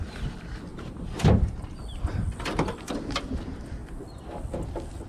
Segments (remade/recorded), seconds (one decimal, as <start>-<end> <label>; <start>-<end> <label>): 0.0-5.1 recorded